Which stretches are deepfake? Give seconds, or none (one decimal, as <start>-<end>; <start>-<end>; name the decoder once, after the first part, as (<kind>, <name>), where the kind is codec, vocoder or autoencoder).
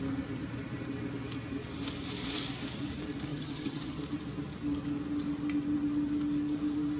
3.3-4.0 (vocoder, HiFi-GAN)